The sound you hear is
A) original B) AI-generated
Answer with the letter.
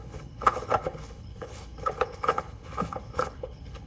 B